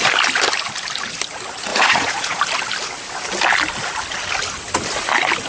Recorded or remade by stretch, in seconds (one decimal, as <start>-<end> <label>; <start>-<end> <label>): 0.0-1.7 recorded; 1.7-2.4 remade; 2.4-5.5 recorded